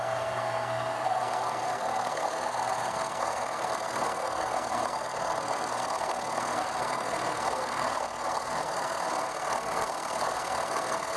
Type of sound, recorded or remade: remade